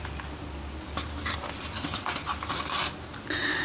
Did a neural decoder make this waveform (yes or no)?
no